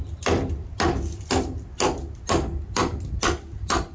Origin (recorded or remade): recorded